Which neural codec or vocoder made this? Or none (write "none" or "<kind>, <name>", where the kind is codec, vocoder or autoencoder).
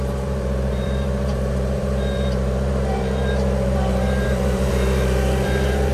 vocoder, BigVGAN v2